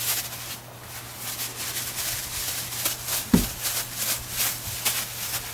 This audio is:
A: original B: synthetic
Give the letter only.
A